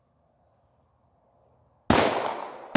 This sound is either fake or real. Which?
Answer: real